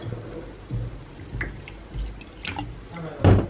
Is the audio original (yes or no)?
yes